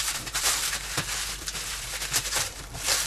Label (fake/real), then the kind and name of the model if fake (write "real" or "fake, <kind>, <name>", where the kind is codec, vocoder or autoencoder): real